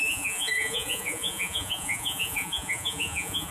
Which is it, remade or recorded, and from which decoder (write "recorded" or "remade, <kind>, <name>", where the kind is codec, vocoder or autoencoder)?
remade, vocoder, Vocos